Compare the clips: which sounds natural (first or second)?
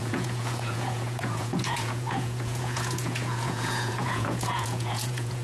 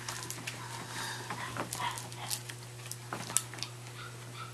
second